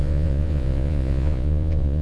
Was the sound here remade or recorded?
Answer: remade